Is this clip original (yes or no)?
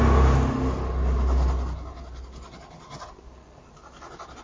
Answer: yes